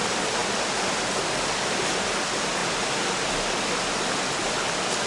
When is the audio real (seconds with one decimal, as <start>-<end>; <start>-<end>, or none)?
0.0-5.1

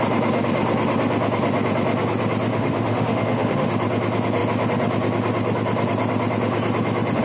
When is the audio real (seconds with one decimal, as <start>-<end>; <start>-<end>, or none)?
0.0-2.5; 3.7-7.2

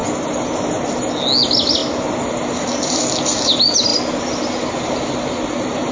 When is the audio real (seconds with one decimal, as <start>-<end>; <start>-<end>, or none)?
0.0-5.9

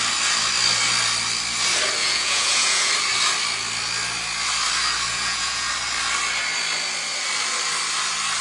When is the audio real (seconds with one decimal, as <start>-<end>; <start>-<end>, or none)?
0.0-2.0; 2.9-5.1; 5.7-8.4

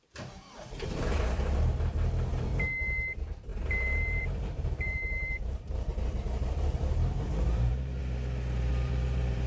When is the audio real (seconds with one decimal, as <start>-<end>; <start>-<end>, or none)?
2.5-3.1; 5.9-6.4; 8.0-8.7

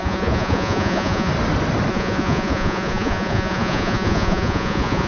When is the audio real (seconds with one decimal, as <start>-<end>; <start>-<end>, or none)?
1.3-1.9